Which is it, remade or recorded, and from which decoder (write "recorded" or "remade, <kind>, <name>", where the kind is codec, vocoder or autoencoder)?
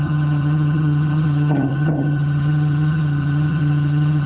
remade, vocoder, HiFi-GAN